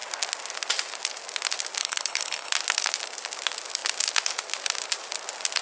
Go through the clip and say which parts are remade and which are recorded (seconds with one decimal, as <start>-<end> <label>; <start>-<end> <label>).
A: 0.0-1.8 recorded; 1.8-2.5 remade; 2.5-5.6 recorded